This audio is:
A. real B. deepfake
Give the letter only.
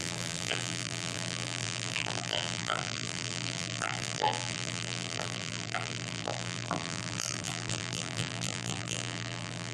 B